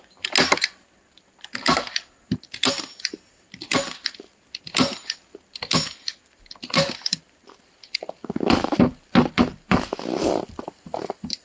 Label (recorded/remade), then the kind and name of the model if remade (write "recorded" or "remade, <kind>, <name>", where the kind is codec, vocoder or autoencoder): recorded